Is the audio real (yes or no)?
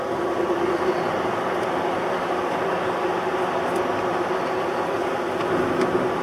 yes